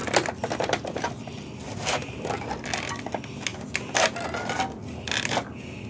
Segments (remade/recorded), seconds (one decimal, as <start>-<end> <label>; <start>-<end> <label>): 0.0-1.1 remade; 1.1-3.5 recorded; 3.5-4.2 remade; 4.2-5.9 recorded